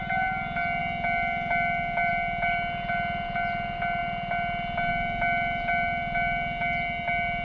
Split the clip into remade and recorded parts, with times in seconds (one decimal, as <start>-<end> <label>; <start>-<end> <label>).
0.0-7.4 recorded